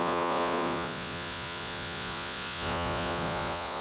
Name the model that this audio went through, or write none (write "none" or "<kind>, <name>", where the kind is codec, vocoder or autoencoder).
vocoder, Vocos